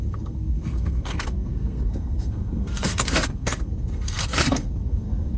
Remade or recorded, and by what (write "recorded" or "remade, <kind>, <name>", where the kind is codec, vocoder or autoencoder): remade, codec, SNAC